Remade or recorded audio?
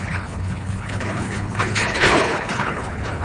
remade